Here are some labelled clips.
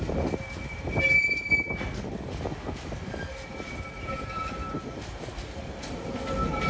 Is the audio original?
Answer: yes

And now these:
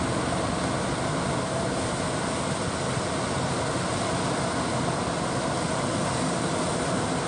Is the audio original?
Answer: yes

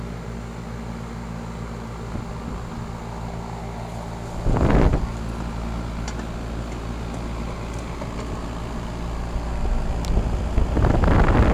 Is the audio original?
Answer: yes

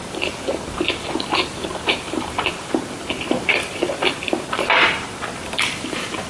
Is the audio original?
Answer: no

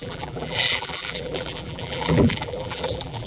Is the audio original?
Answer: no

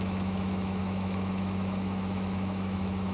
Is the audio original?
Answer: no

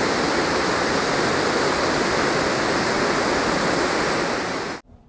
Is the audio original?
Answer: yes